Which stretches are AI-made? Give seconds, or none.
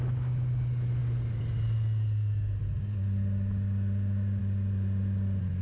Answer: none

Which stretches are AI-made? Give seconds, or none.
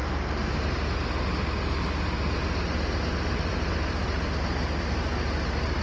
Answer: none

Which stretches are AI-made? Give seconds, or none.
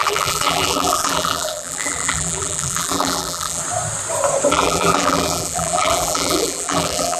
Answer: 0.0-3.6 (vocoder, BigVGAN v2); 4.5-7.2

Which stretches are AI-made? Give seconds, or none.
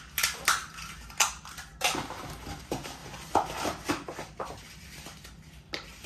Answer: none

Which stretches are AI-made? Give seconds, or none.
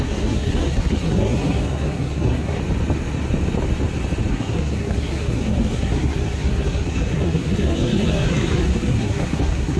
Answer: 0.0-2.6 (codec, SNAC); 4.3-9.8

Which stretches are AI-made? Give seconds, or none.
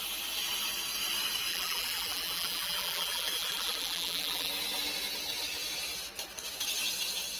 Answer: 1.5-4.5 (vocoder, BigVGAN v2)